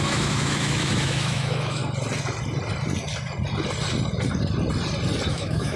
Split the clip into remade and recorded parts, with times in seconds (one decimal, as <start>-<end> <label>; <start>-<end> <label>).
0.0-1.8 remade; 1.8-5.3 recorded; 5.3-5.8 remade